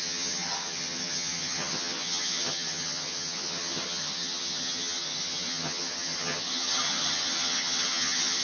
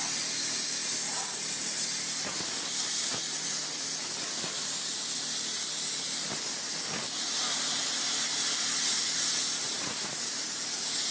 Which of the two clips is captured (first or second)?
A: second